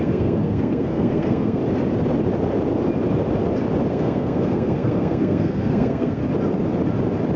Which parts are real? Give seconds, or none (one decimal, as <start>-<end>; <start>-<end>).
1.6-3.9; 6.2-7.4